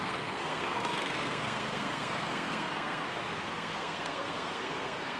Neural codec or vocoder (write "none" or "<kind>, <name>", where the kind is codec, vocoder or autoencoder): codec, SNAC